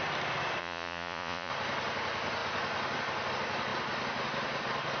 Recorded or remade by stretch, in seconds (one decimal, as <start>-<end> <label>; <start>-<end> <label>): 0.0-0.6 recorded; 0.6-1.5 remade; 1.5-5.0 recorded